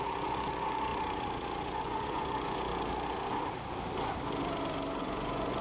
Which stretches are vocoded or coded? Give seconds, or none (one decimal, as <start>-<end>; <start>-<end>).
0.0-0.9; 1.6-2.7; 5.0-5.6